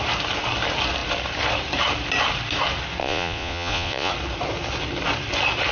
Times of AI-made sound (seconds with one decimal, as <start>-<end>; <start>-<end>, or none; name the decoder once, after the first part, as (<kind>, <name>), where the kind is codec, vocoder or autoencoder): 3.0-4.1 (vocoder, Vocos)